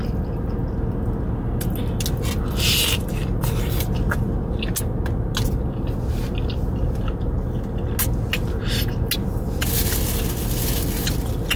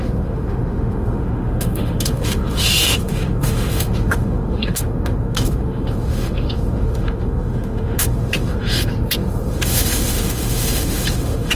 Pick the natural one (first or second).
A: first